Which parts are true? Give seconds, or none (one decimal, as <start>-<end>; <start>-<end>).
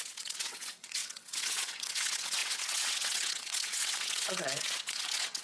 none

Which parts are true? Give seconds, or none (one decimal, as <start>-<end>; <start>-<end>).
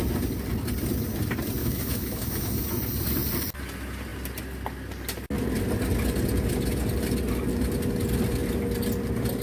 0.0-1.6; 2.6-9.4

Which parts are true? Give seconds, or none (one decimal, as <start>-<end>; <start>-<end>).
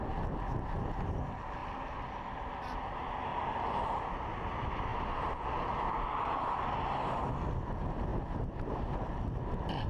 0.0-1.6; 2.1-3.3; 4.1-9.9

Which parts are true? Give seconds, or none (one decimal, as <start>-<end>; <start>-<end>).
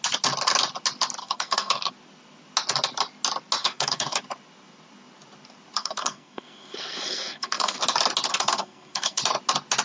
0.0-1.2; 1.9-3.6; 4.2-5.8; 7.8-8.3; 9.2-9.8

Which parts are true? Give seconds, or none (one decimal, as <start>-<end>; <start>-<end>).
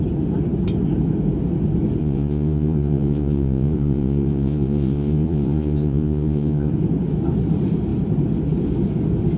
0.0-2.0; 6.7-9.4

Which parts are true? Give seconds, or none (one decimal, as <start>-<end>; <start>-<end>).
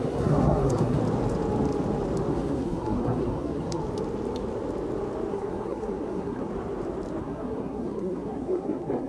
1.0-2.3; 3.8-5.3; 6.5-7.2